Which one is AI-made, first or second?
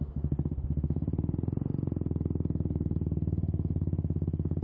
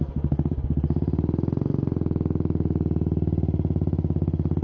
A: first